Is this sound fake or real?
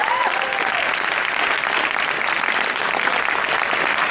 real